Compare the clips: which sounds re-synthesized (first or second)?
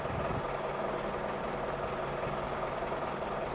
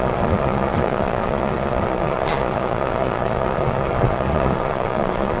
second